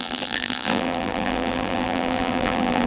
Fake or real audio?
fake